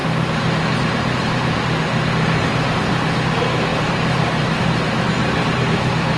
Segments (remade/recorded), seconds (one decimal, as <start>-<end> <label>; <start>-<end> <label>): 0.0-3.7 recorded; 3.7-4.6 remade; 4.6-6.2 recorded

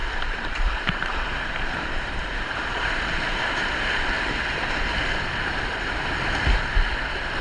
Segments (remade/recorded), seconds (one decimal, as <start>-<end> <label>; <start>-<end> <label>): 0.0-3.4 remade; 3.4-7.4 recorded

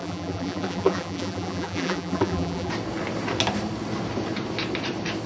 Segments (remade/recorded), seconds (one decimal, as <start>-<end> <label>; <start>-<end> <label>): 0.0-2.7 remade; 2.7-5.3 recorded

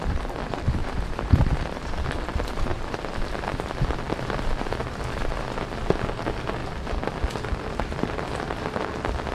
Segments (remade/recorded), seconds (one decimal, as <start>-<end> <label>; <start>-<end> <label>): 0.0-0.8 recorded; 0.8-1.7 remade; 1.7-9.3 recorded

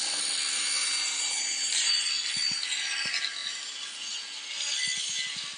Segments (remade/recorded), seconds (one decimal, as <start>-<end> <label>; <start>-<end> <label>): 0.0-0.8 recorded; 0.8-1.9 remade; 1.9-5.6 recorded

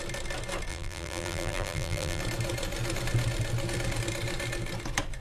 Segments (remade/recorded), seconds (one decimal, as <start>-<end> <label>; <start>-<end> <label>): 0.0-0.7 recorded; 0.7-2.2 remade; 2.2-5.2 recorded

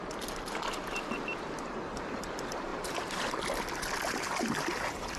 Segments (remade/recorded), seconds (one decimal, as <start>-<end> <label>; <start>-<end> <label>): 0.0-2.7 recorded; 2.7-3.4 remade; 3.4-5.2 recorded

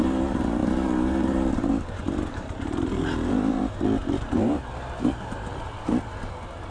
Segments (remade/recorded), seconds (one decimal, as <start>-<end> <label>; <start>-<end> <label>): 0.0-3.6 remade; 3.6-4.2 recorded; 4.2-5.5 remade; 5.5-6.0 recorded; 6.0-6.7 remade